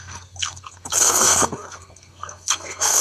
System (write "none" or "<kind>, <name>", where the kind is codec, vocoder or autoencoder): codec, SNAC